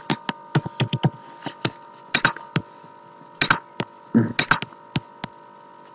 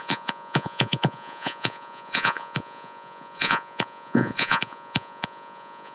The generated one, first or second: second